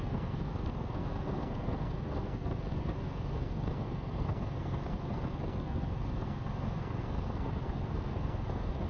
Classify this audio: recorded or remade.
remade